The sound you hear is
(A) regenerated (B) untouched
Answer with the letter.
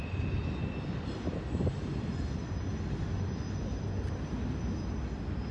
B